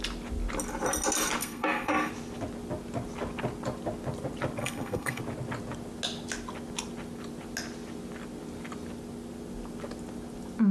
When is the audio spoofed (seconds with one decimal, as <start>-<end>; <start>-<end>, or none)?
1.4-2.1; 4.6-5.2